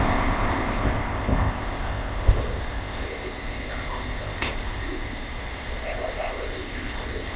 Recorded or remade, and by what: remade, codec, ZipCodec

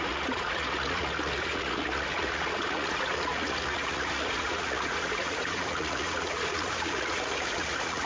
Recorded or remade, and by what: remade, vocoder, Vocos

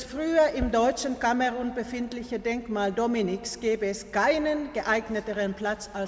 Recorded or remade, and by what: recorded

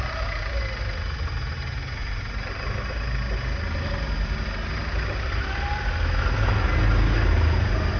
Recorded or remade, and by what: recorded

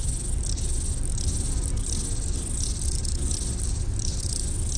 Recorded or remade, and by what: recorded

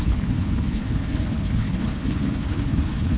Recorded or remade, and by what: remade, codec, HILCodec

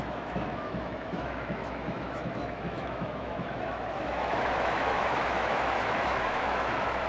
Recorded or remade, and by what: remade, autoencoder, DAC-VAE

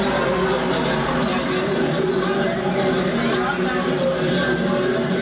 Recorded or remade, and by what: recorded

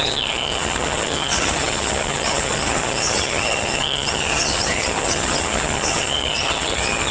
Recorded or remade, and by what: remade, vocoder, HiFi-GAN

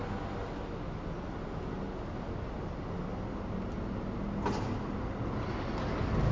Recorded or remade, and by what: recorded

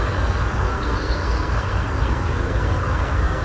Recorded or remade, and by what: remade, codec, SNAC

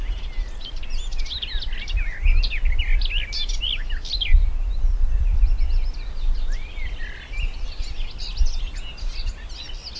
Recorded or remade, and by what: recorded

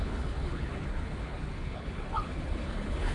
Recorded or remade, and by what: remade, codec, HILCodec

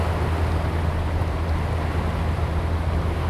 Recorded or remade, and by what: recorded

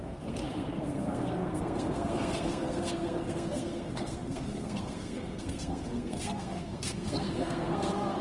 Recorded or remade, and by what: remade, codec, SNAC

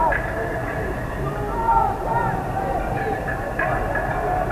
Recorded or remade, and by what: recorded